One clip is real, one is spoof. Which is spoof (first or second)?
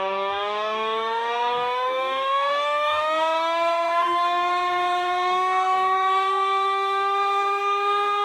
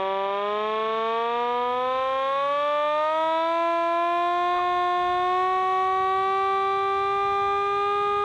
first